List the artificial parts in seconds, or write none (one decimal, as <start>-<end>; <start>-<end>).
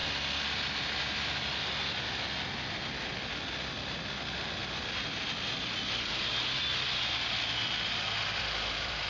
none